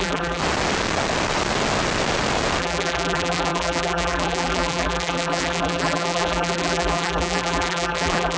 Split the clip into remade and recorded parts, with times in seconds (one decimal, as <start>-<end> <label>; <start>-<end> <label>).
0.0-0.4 remade; 0.4-2.6 recorded; 2.6-8.4 remade